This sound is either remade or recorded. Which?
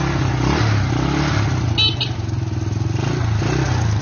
recorded